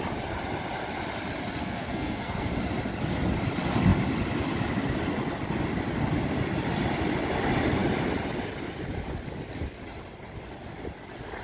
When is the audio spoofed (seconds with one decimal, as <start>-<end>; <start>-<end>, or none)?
1.6-2.5